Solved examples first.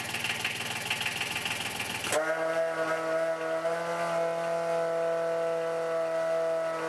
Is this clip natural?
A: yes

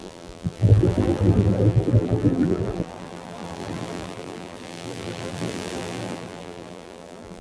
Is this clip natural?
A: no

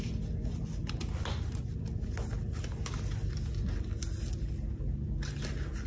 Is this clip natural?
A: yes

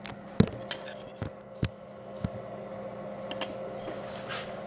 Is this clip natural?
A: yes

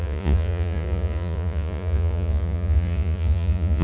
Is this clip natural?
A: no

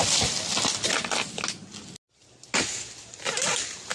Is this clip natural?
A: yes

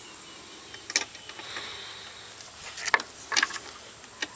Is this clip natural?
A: yes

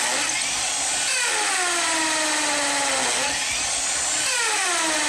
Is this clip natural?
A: yes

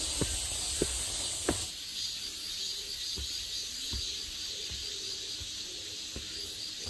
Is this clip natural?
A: yes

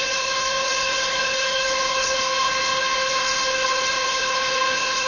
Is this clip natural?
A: no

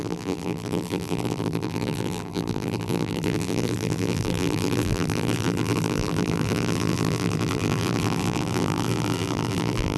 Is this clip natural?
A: no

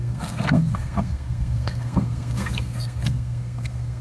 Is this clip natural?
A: no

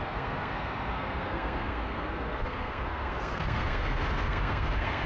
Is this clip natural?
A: no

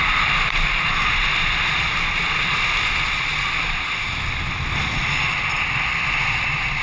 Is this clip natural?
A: yes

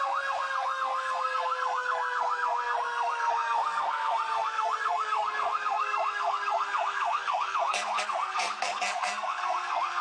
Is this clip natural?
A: no